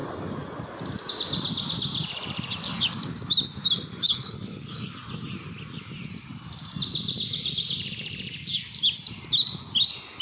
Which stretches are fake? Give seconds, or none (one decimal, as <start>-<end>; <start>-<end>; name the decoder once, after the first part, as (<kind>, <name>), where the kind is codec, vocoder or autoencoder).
4.0-5.0 (codec, HILCodec)